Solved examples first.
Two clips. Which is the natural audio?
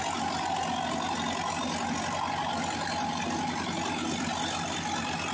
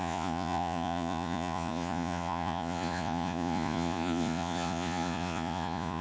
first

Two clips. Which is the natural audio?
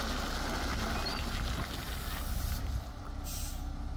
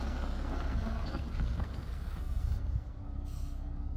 first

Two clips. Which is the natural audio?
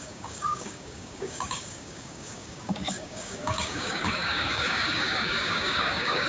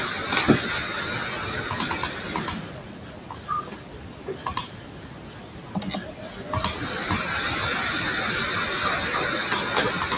second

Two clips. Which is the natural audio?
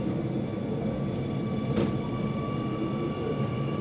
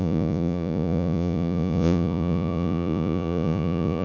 first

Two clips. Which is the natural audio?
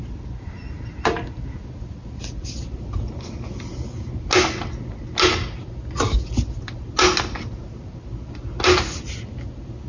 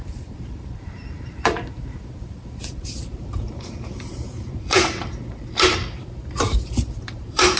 first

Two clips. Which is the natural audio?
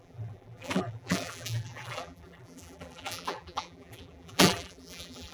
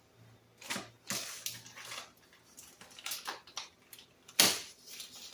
second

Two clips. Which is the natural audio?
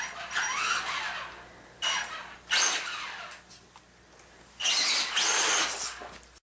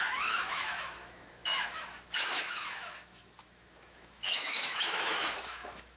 first